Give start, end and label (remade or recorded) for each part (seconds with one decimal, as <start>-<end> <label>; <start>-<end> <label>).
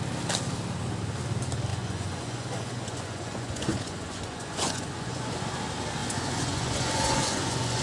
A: 0.0-1.7 recorded; 1.7-5.5 remade; 5.5-6.0 recorded; 6.0-7.8 remade